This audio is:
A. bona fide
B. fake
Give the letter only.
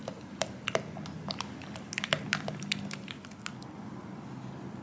A